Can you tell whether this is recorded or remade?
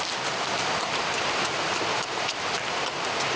recorded